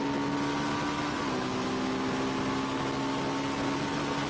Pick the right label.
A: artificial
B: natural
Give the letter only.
B